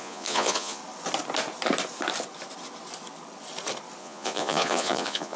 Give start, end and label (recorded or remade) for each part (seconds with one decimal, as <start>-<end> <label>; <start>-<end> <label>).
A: 0.0-0.8 remade; 0.8-4.0 recorded; 4.0-5.4 remade